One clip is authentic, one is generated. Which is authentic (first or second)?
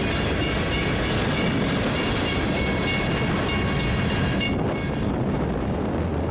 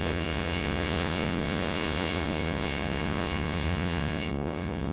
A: first